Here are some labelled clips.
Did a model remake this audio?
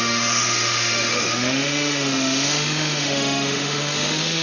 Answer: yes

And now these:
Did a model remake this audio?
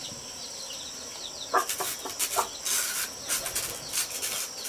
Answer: no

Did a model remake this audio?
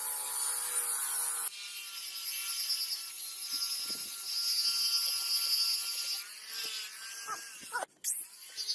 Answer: no